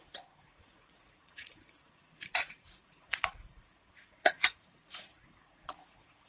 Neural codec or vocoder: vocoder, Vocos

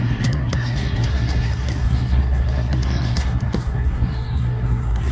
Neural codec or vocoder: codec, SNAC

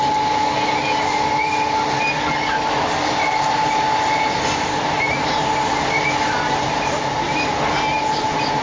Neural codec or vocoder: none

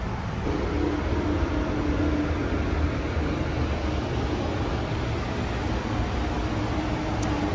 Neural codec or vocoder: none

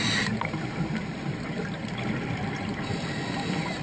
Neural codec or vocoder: none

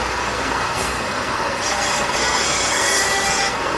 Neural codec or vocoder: codec, SNAC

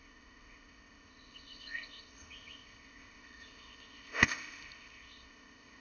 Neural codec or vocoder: codec, ZipCodec